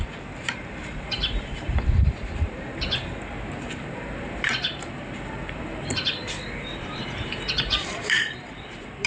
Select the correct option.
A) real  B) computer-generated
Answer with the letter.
B